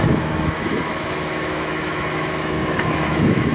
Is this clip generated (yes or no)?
yes